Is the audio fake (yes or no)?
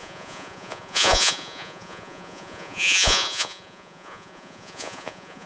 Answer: yes